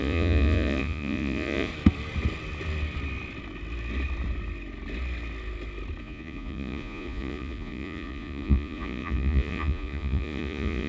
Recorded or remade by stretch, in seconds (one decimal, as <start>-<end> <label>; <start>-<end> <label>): 0.0-1.7 remade; 1.7-6.0 recorded; 6.0-10.9 remade

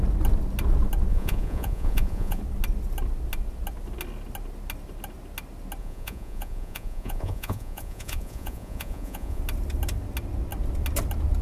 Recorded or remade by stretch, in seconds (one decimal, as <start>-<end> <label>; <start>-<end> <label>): 0.0-1.1 recorded; 1.1-2.4 remade; 2.4-5.8 recorded; 5.8-9.4 remade; 9.4-11.4 recorded

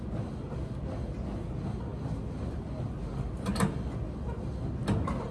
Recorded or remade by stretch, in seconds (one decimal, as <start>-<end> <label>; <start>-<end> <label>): 0.0-5.3 recorded

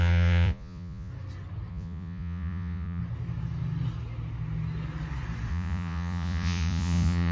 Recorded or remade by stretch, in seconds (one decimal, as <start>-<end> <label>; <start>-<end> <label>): 0.0-1.1 remade; 1.1-1.7 recorded; 1.7-3.0 remade; 3.0-5.5 recorded; 5.5-7.3 remade